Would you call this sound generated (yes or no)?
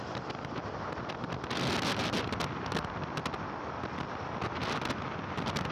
no